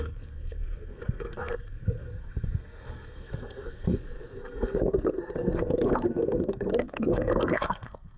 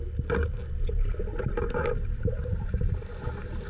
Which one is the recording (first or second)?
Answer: second